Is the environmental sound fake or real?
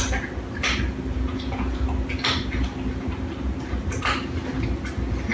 real